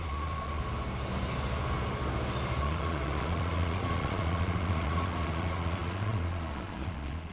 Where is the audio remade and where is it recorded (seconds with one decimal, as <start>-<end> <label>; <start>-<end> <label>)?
0.0-0.6 remade; 0.6-2.6 recorded; 2.6-7.3 remade

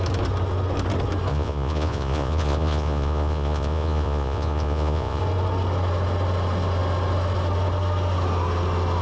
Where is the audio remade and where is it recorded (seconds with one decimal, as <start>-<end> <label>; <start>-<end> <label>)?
0.0-1.3 recorded; 1.3-5.2 remade; 5.2-9.0 recorded

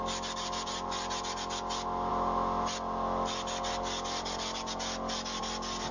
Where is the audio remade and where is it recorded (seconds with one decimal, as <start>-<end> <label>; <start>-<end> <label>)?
0.0-5.9 recorded

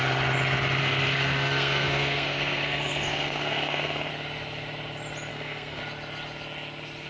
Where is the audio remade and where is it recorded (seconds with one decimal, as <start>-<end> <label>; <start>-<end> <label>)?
0.0-0.8 recorded; 0.8-4.1 remade; 4.1-5.3 recorded; 5.3-5.8 remade; 5.8-7.1 recorded

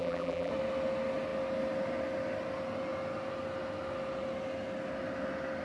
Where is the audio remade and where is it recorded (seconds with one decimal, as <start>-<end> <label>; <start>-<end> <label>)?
0.0-0.5 remade; 0.5-5.6 recorded

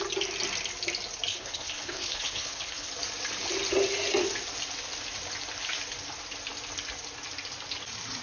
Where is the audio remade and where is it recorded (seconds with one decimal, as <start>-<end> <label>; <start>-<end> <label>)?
0.0-1.3 recorded; 1.3-2.9 remade; 2.9-8.2 recorded

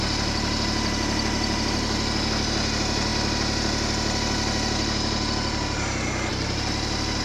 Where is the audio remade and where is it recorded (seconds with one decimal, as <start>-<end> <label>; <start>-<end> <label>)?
0.0-7.2 recorded

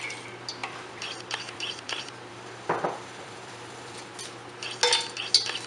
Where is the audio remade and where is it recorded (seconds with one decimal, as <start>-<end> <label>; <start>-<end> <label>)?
0.0-0.6 recorded; 0.6-4.0 remade; 4.0-5.7 recorded